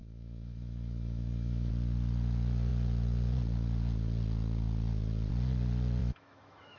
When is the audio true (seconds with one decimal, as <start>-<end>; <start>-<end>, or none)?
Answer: 1.7-6.0